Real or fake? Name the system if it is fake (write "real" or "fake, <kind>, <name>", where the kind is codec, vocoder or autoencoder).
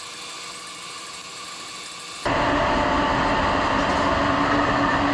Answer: real